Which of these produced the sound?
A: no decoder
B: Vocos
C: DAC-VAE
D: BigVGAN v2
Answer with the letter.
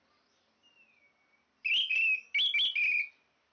A